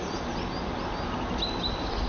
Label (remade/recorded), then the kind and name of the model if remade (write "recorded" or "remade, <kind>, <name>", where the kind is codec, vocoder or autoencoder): recorded